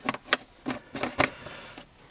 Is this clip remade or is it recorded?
recorded